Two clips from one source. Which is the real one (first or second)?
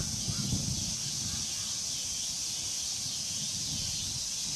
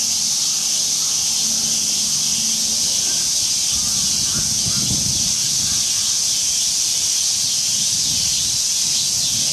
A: first